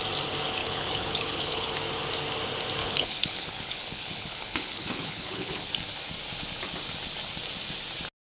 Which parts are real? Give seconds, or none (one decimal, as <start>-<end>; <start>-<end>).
0.0-0.6; 1.7-2.8; 5.7-8.4

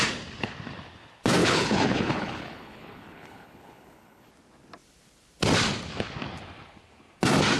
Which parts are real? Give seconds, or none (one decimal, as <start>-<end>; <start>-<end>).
0.0-1.4; 4.3-7.6

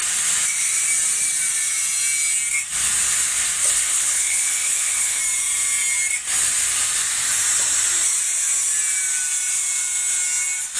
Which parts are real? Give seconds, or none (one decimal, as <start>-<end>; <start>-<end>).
0.0-3.6; 5.2-10.8